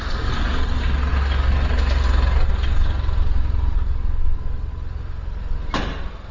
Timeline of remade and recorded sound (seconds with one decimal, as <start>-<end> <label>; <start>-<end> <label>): 0.0-6.3 recorded